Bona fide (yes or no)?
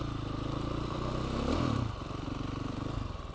no